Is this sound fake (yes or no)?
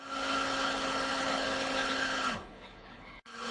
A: yes